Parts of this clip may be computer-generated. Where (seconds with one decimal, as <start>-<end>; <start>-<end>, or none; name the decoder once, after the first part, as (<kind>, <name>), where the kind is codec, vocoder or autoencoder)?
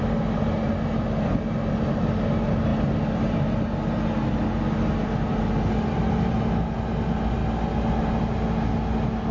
none